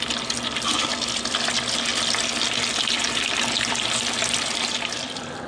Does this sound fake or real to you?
real